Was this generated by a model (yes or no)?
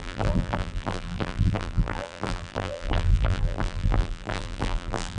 yes